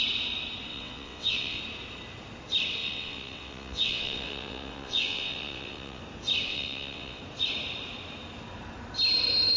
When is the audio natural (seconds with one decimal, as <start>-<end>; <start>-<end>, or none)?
0.0-0.7; 1.6-2.8; 6.0-6.5; 7.2-9.6

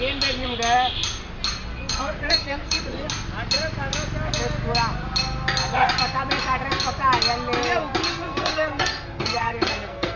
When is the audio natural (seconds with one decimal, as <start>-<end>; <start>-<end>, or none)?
0.0-1.7; 2.8-8.1

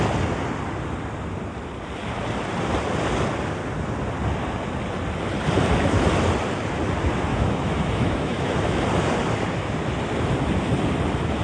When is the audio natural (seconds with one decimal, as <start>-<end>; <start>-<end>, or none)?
0.0-7.3; 8.8-11.4

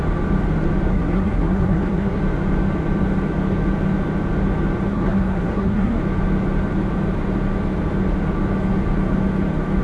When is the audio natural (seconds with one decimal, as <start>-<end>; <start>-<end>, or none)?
0.0-0.9; 2.2-4.9; 6.0-9.8

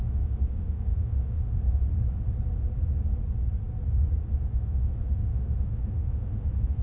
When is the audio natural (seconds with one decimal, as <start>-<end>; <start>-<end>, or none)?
1.8-4.4

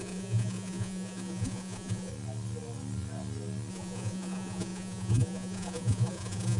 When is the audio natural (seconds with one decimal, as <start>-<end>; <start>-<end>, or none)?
2.1-3.7

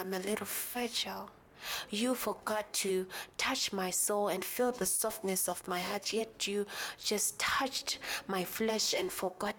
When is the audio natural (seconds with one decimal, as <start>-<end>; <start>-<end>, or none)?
1.0-2.2; 2.9-4.4; 6.2-8.7